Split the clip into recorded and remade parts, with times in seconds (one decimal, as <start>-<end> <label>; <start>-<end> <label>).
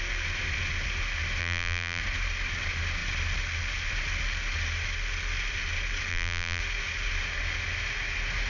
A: 0.0-1.4 recorded; 1.4-2.0 remade; 2.0-6.1 recorded; 6.1-6.6 remade; 6.6-8.5 recorded